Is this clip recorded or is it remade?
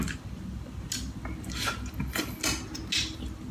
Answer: recorded